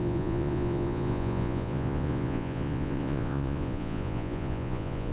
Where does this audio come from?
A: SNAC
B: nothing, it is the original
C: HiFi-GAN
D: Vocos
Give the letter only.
D